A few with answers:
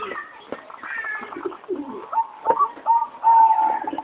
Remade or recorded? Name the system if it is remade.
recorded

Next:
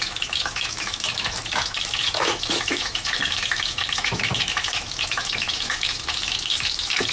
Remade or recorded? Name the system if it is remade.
remade, autoencoder, DAC-VAE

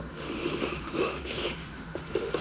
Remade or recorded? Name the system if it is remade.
remade, autoencoder, DAC-VAE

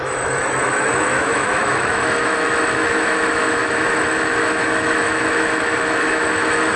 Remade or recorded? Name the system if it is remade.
remade, autoencoder, DAC-VAE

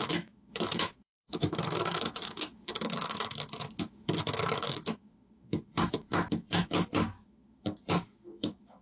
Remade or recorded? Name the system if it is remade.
remade, autoencoder, DAC-VAE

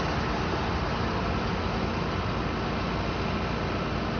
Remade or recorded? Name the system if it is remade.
recorded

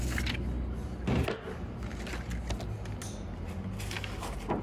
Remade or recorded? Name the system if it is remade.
recorded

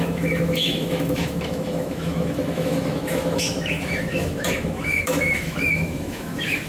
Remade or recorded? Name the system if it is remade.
remade, autoencoder, DAC-VAE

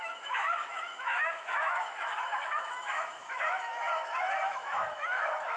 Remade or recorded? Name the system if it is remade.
remade, autoencoder, DAC-VAE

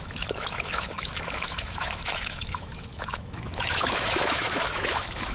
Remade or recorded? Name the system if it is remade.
remade, autoencoder, DAC-VAE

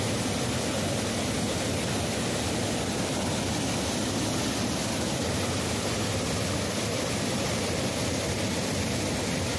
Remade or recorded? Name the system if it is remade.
recorded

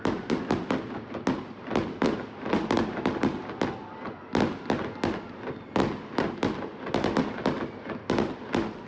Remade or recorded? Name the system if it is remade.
recorded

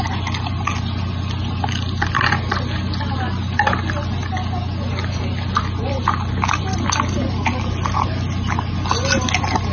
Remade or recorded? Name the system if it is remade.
recorded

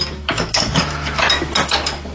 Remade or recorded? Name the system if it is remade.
remade, autoencoder, DAC-VAE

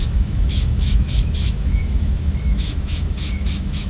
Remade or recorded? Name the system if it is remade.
remade, autoencoder, DAC-VAE